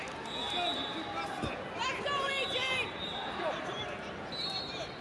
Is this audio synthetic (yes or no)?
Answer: no